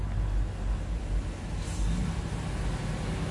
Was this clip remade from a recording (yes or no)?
no